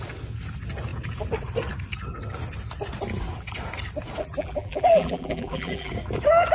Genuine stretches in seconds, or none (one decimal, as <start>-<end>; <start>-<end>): 0.0-4.2; 5.9-6.5